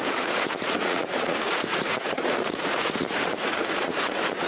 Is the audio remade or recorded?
remade